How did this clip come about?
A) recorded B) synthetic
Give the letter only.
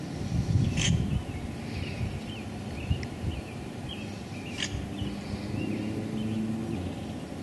A